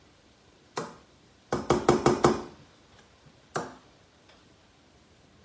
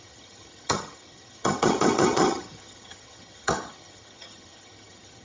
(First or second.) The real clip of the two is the first